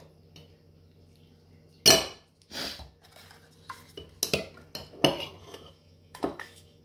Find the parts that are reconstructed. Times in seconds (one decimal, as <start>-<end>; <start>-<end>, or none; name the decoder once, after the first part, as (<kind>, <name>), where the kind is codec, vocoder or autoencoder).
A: 5.4-6.8 (autoencoder, DAC-VAE)